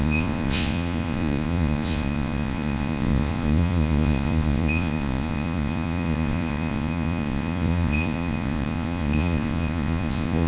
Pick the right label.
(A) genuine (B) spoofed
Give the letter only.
B